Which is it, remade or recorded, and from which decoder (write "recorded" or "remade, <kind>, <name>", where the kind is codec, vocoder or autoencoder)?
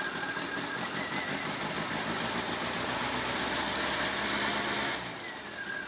recorded